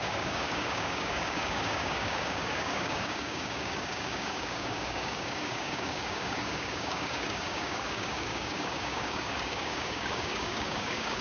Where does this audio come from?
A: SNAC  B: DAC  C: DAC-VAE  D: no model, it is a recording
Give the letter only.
B